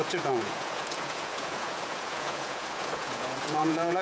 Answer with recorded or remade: remade